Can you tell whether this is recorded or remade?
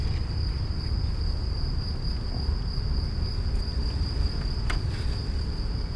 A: recorded